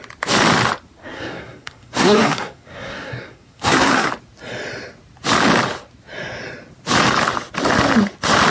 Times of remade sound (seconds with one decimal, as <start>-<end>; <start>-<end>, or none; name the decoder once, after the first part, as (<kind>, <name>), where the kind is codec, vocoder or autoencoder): 1.0-4.1 (codec, SNAC)